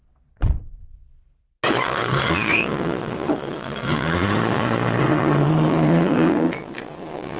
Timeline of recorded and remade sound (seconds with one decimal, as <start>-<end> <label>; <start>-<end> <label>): 0.0-0.8 remade; 0.8-1.7 recorded; 1.7-7.4 remade